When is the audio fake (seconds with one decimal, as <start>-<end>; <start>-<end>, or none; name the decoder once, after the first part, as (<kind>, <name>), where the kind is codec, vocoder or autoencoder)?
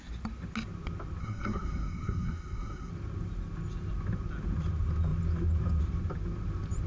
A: 1.2-2.9 (codec, SNAC)